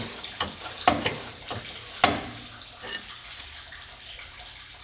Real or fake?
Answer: real